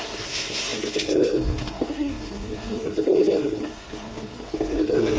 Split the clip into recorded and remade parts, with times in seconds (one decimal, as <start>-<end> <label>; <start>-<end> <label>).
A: 0.0-5.2 remade